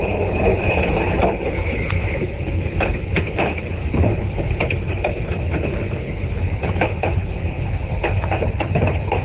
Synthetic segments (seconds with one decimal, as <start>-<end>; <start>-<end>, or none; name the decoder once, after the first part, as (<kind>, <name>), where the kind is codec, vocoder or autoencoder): 0.0-9.2 (codec, HILCodec)